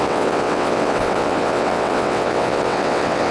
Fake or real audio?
fake